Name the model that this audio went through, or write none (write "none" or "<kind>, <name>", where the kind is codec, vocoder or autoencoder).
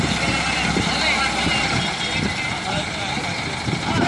none